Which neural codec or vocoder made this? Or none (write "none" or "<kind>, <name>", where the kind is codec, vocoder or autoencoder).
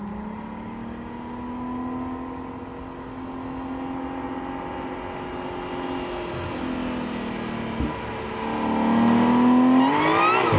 none